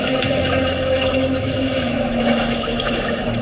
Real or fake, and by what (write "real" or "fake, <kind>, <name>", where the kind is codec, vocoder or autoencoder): fake, autoencoder, DAC-VAE